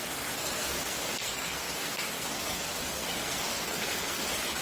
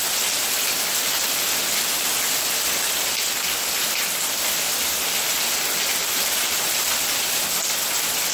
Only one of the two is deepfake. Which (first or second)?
first